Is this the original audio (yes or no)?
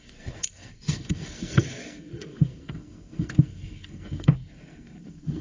no